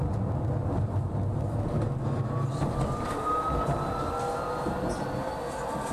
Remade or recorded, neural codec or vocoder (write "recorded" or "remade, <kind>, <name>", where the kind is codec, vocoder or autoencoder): recorded